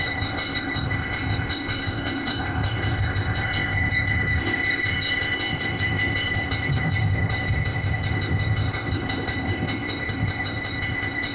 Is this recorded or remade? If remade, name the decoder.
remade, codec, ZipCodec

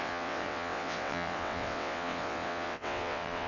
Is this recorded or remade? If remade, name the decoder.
remade, vocoder, WaveNeXt